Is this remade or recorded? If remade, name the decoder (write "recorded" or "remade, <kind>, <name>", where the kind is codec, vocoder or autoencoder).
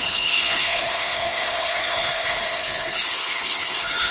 remade, codec, HILCodec